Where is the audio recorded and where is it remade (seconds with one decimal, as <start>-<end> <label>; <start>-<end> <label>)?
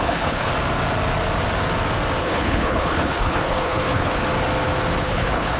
0.0-0.5 remade; 0.5-2.2 recorded; 2.2-4.2 remade; 4.2-5.0 recorded; 5.0-5.6 remade